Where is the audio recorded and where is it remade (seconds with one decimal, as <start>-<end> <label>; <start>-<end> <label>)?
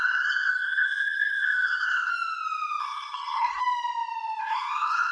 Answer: 0.0-2.1 remade; 2.1-2.8 recorded; 2.8-3.6 remade; 3.6-4.4 recorded; 4.4-5.1 remade